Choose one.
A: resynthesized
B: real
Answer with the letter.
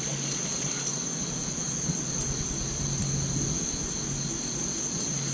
B